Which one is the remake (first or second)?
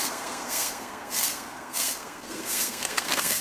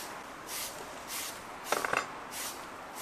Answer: first